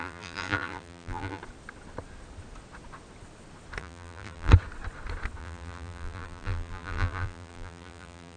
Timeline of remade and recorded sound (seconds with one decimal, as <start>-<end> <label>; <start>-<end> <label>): 0.0-1.4 remade; 1.4-3.8 recorded; 3.8-4.5 remade; 4.5-5.4 recorded; 5.4-8.4 remade